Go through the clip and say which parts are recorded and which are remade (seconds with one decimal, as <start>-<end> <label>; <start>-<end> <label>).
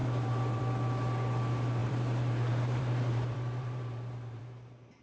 0.0-0.6 remade; 0.6-1.8 recorded; 1.8-4.4 remade; 4.4-5.0 recorded